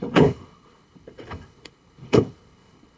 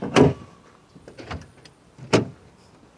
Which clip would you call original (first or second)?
second